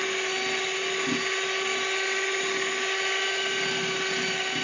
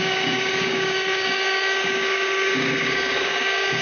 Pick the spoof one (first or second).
second